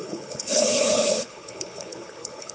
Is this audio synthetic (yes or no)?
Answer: yes